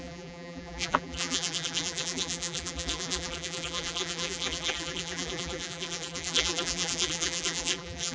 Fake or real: fake